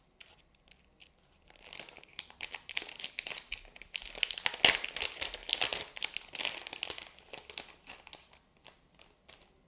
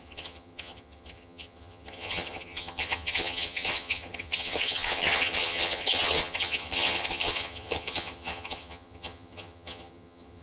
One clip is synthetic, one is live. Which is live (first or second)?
first